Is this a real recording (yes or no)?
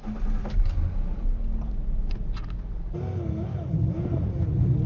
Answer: yes